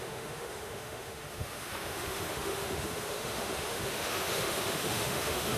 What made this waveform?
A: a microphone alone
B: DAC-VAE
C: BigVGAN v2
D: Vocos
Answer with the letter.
B